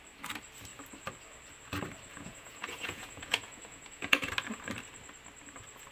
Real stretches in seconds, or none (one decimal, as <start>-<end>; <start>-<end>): 0.0-2.1; 4.3-5.9